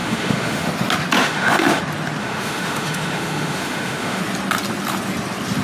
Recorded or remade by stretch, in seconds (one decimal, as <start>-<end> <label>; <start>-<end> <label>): 0.0-0.7 remade; 0.7-1.2 recorded; 1.2-1.8 remade; 1.8-2.2 recorded; 2.2-4.2 remade; 4.2-5.6 recorded

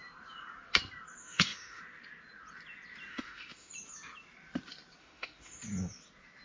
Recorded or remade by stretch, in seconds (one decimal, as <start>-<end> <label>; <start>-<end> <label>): 0.0-1.2 recorded; 1.2-1.8 remade; 1.8-3.1 recorded; 3.1-3.7 remade; 3.7-5.0 recorded; 5.0-5.6 remade; 5.6-6.4 recorded